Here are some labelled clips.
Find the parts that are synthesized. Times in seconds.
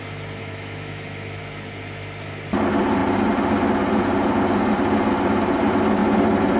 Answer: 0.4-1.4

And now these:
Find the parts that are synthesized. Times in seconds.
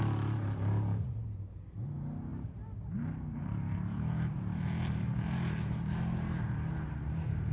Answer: 0.0-2.3; 2.9-7.5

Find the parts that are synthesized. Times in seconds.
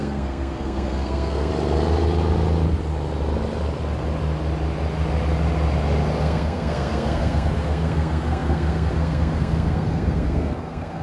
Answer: 0.0-1.5; 6.2-11.0